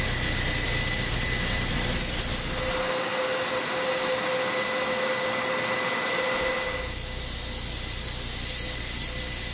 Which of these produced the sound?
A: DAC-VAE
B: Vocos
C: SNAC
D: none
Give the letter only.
D